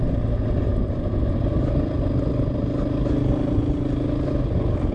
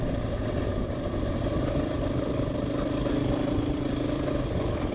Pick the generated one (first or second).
second